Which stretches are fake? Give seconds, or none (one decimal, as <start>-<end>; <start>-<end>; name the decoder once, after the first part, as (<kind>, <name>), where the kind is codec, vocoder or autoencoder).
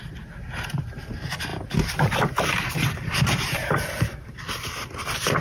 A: 1.5-4.3 (vocoder, BigVGAN v2)